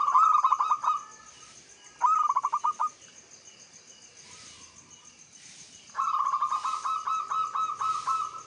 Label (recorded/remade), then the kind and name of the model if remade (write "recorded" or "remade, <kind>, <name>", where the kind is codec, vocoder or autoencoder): recorded